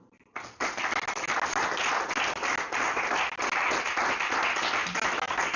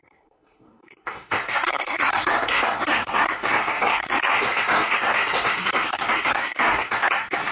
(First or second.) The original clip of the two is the first